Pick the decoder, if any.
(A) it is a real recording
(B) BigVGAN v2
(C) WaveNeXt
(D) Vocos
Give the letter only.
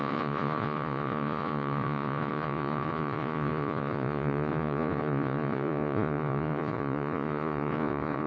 D